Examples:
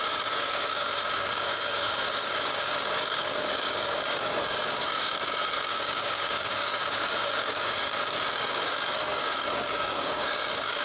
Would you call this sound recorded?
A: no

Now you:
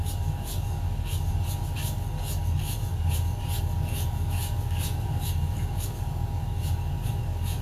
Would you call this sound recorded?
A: no